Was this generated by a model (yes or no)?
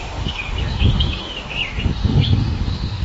yes